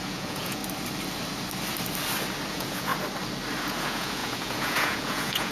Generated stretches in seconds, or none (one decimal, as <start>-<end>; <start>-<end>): 0.0-0.6; 2.5-2.9; 3.6-5.5

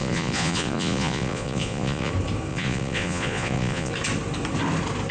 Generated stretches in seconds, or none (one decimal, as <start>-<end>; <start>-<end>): 0.0-2.1; 2.5-3.9

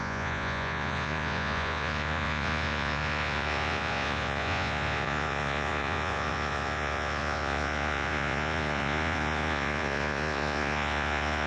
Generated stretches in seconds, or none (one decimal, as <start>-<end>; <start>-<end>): 0.0-11.5

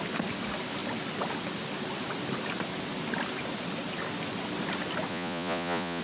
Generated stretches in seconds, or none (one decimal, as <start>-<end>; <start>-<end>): 5.1-6.0

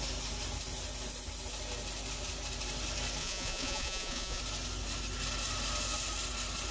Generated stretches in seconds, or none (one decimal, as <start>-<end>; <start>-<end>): 3.2-4.4